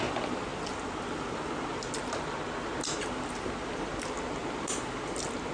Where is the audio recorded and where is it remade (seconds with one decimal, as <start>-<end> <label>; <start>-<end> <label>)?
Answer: 0.0-5.5 recorded